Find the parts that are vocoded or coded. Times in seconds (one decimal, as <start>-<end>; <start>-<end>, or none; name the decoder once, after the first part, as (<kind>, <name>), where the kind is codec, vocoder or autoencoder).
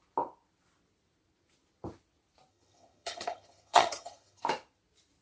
2.5-4.4 (vocoder, HiFi-GAN)